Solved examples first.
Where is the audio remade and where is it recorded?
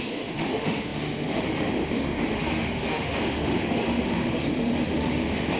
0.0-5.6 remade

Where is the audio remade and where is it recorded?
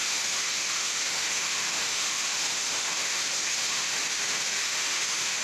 0.0-5.4 remade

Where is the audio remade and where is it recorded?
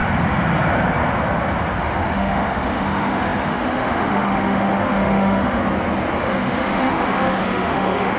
0.0-1.8 recorded; 1.8-5.6 remade; 5.6-6.2 recorded; 6.2-8.2 remade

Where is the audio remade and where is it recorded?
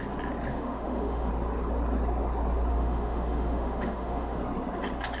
0.0-0.5 recorded; 0.5-1.3 remade; 1.3-2.7 recorded; 2.7-4.4 remade; 4.4-5.2 recorded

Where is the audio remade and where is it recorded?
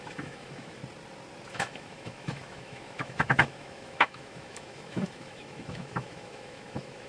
0.0-0.8 remade; 0.8-1.5 recorded; 1.5-7.1 remade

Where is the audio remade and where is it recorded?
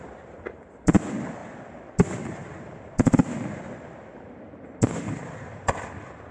0.0-6.3 recorded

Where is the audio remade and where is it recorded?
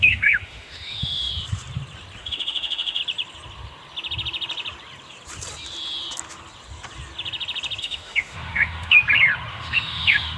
0.0-1.3 remade; 1.3-2.2 recorded; 2.2-3.0 remade; 3.0-7.8 recorded; 7.8-9.0 remade; 9.0-9.5 recorded; 9.5-10.4 remade